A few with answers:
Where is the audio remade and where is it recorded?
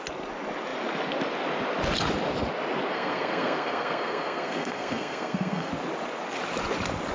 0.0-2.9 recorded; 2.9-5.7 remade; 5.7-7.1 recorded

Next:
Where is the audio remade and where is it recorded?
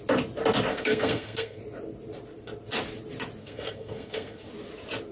0.0-0.7 recorded; 0.7-1.6 remade; 1.6-3.4 recorded; 3.4-4.5 remade; 4.5-5.1 recorded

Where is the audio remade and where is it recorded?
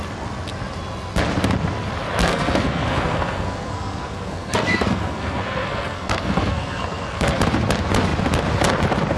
0.0-2.2 recorded; 2.2-7.4 remade; 7.4-9.2 recorded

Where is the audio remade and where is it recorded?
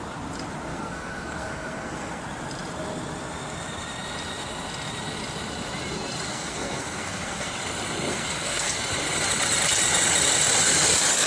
0.0-0.7 recorded; 0.7-2.2 remade; 2.2-6.3 recorded; 6.3-7.5 remade; 7.5-8.1 recorded; 8.1-8.8 remade; 8.8-11.3 recorded